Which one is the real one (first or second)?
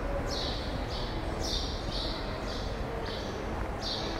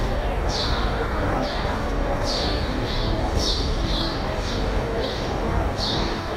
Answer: first